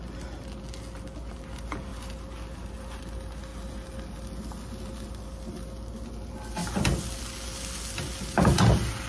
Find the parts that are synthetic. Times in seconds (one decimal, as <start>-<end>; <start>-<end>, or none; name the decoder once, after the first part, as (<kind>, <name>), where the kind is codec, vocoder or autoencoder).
none